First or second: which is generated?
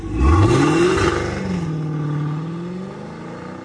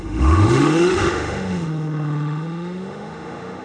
second